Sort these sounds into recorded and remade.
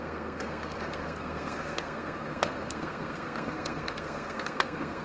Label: remade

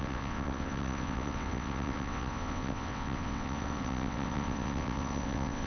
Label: remade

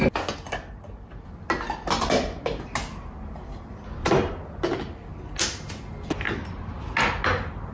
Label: recorded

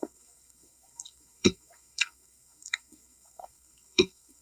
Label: remade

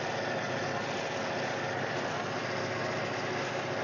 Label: recorded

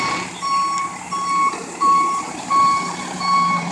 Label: remade